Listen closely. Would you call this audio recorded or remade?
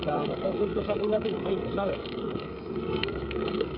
remade